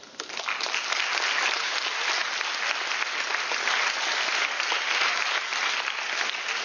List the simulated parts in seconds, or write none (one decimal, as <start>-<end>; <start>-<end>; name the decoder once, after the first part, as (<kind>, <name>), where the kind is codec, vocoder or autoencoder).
none